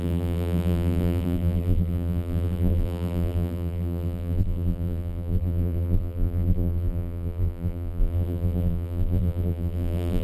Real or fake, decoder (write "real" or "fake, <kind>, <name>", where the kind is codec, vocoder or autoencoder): fake, vocoder, BigVGAN v2